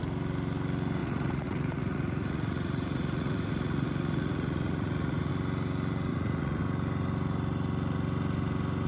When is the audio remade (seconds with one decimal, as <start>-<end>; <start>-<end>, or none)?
1.0-5.3; 6.1-6.6